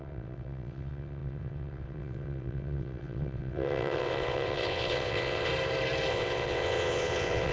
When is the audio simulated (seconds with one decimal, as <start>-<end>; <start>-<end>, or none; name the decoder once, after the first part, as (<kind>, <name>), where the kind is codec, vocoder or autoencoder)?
0.0-5.5 (vocoder, WaveNeXt); 6.1-7.5